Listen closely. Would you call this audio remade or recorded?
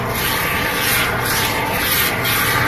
recorded